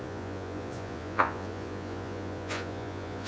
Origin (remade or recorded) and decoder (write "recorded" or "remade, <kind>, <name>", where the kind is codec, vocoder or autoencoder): remade, vocoder, Vocos